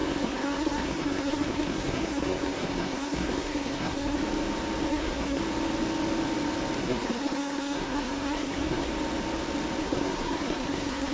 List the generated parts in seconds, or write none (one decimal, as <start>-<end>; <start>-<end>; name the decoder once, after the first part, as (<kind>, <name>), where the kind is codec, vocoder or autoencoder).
0.0-4.2 (codec, SNAC); 4.9-5.4; 6.8-8.9; 9.8-11.1